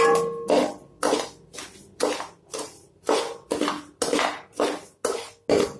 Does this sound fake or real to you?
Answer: real